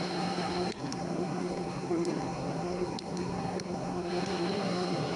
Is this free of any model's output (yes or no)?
no